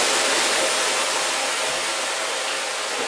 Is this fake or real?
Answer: real